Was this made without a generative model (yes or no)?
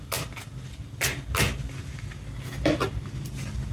yes